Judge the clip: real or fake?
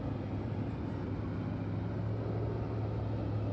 real